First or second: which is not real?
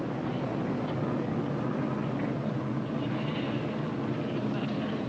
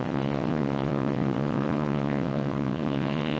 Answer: second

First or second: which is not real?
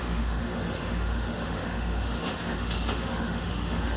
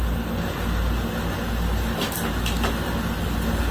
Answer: first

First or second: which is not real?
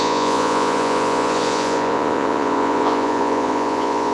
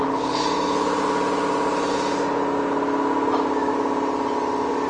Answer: first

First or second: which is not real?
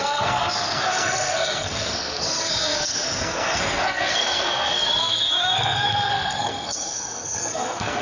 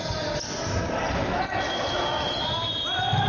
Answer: first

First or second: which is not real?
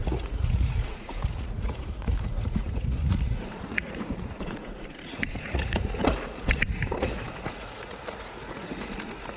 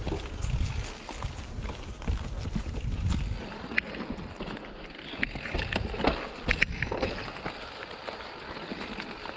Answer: first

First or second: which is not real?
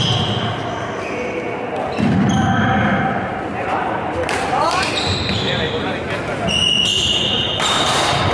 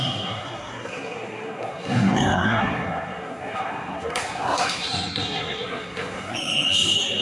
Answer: second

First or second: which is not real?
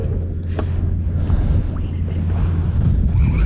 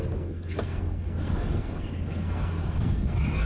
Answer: second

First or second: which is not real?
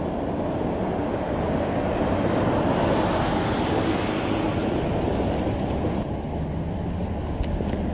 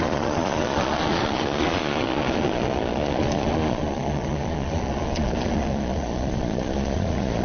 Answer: second